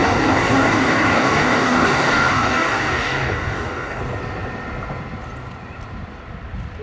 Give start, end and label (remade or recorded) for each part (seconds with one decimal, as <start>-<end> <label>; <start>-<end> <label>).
0.0-4.0 remade; 4.0-6.8 recorded